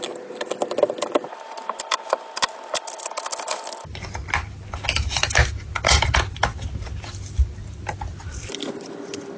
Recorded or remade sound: recorded